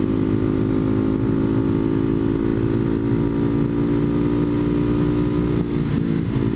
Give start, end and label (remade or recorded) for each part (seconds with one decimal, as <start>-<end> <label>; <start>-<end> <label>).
0.0-6.6 recorded